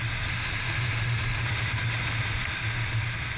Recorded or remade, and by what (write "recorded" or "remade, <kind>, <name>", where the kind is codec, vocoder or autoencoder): recorded